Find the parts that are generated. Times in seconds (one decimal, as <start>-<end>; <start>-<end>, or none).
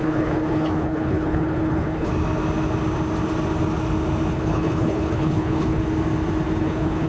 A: 0.0-2.1; 4.3-5.8; 6.6-7.1